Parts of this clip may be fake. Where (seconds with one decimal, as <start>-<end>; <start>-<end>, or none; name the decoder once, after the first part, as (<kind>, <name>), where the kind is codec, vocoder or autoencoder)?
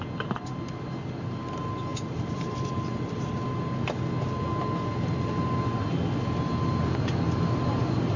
1.9-3.2 (vocoder, BigVGAN v2)